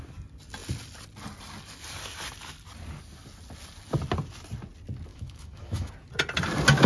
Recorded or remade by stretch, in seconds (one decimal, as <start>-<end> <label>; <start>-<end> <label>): 0.0-5.1 recorded; 5.1-5.9 remade; 5.9-6.9 recorded

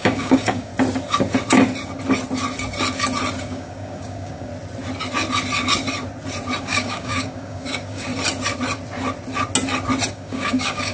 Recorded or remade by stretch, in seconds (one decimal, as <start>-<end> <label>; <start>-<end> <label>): 0.0-0.7 remade; 0.7-3.4 recorded; 3.4-4.5 remade; 4.5-6.6 recorded; 6.6-8.1 remade; 8.1-10.1 recorded; 10.1-10.9 remade